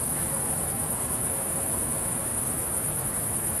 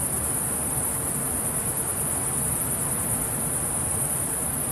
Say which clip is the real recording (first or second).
second